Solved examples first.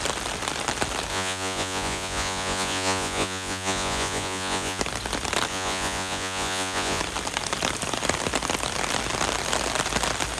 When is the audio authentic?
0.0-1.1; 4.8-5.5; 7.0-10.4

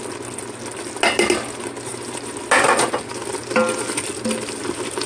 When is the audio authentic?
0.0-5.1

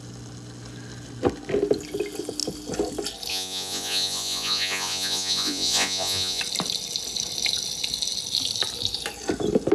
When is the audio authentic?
0.0-3.3; 6.4-9.7